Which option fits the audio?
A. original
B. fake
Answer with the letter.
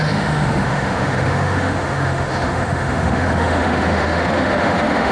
B